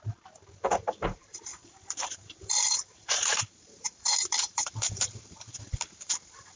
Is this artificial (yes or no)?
yes